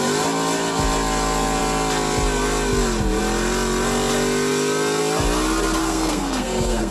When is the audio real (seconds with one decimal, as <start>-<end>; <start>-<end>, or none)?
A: 0.0-5.8